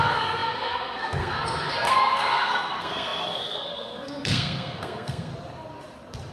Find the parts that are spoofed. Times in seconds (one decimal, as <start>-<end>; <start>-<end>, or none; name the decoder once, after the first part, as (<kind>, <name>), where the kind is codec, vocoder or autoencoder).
0.0-5.3 (codec, SNAC)